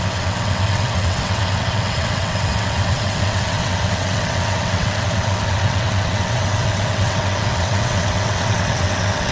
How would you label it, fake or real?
fake